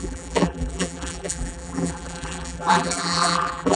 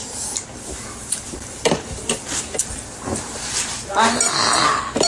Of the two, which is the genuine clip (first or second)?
second